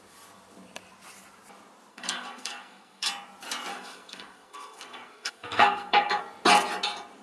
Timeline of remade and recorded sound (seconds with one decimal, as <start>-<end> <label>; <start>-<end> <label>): 0.0-1.9 recorded; 1.9-3.1 remade; 3.1-3.7 recorded; 3.7-6.2 remade; 6.2-7.2 recorded